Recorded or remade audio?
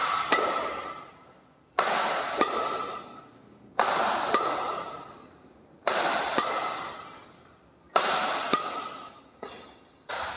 recorded